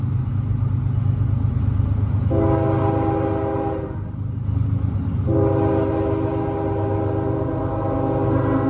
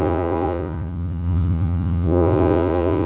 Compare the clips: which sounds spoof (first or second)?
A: second